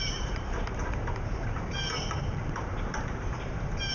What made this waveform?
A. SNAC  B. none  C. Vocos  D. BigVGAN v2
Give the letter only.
D